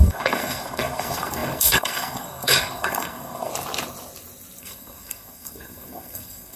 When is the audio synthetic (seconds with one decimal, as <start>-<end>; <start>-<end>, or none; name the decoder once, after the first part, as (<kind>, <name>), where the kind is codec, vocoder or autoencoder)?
0.0-3.5 (codec, SNAC); 4.6-6.6

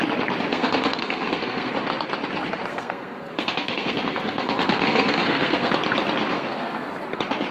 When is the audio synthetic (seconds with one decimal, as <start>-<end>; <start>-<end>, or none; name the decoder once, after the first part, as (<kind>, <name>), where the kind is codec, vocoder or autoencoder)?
0.5-1.7 (codec, SNAC); 2.7-5.7; 6.3-6.9

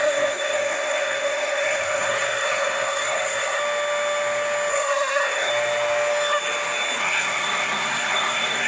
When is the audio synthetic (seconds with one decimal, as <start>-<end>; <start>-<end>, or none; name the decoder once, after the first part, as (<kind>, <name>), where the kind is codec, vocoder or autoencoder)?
0.0-3.6 (codec, SNAC); 4.7-5.5; 7.0-8.7

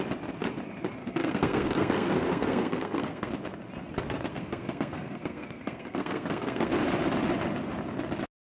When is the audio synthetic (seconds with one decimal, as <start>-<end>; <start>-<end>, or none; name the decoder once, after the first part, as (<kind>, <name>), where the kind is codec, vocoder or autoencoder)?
1.0-3.3 (codec, SNAC); 4.3-6.7

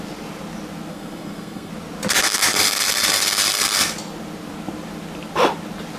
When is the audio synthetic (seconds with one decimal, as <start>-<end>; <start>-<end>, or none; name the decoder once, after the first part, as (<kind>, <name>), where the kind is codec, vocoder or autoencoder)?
0.9-1.7 (codec, SNAC)

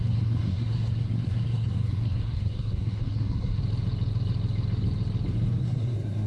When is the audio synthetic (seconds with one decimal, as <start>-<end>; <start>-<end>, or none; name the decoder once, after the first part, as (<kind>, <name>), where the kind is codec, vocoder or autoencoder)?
0.0-3.6 (codec, SNAC); 5.6-6.3

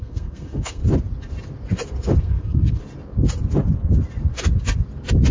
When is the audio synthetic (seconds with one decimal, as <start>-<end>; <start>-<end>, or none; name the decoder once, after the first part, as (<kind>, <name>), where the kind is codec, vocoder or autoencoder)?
0.0-0.8 (codec, SNAC); 2.2-2.8

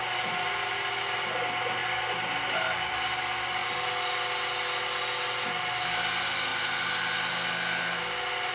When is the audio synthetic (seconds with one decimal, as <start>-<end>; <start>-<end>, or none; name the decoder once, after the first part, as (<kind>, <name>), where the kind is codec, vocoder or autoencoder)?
none